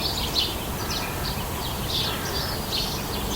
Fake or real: real